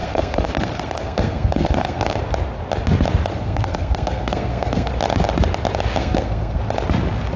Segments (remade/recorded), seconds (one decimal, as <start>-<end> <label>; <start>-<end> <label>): 0.0-2.2 remade; 2.2-3.3 recorded; 3.3-4.9 remade; 4.9-6.0 recorded; 6.0-6.6 remade; 6.6-7.4 recorded

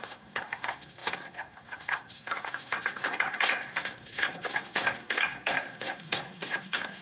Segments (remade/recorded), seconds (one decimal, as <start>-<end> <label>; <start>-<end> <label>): 0.0-7.0 remade

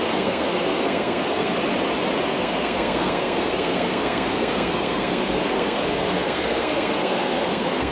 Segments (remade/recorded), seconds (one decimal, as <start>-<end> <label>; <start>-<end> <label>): 0.0-1.5 remade; 1.5-2.3 recorded; 2.3-7.9 remade

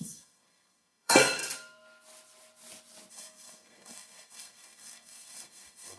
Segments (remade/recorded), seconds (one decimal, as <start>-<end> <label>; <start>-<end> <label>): 0.0-1.4 remade; 1.4-3.1 recorded; 3.1-6.0 remade

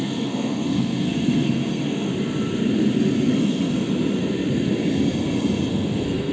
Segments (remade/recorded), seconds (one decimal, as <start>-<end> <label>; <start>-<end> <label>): 0.0-2.1 remade; 2.1-3.3 recorded; 3.3-3.7 remade; 3.7-5.7 recorded; 5.7-6.3 remade

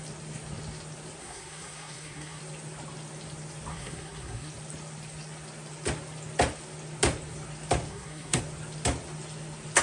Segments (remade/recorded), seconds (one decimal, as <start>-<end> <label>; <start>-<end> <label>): 0.0-1.2 recorded; 1.2-2.4 remade; 2.4-3.7 recorded; 3.7-4.5 remade; 4.5-7.9 recorded; 7.9-8.4 remade; 8.4-9.8 recorded

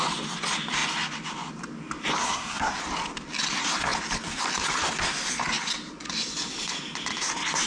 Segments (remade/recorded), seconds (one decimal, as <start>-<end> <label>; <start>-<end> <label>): 0.0-2.2 recorded; 2.2-2.8 remade; 2.8-7.7 recorded

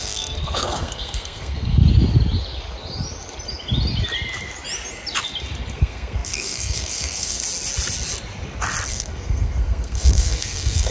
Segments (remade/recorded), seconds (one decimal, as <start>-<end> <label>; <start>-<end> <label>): 0.0-1.8 remade; 1.8-5.7 recorded; 5.7-7.4 remade; 7.4-8.9 recorded; 8.9-10.9 remade